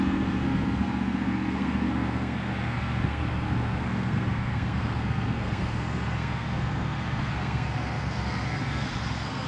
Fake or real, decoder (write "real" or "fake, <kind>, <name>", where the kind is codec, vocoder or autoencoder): fake, codec, SNAC